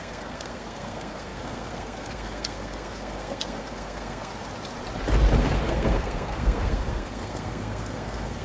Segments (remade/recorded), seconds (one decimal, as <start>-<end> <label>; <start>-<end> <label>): 0.0-4.3 remade; 4.3-5.4 recorded; 5.4-8.4 remade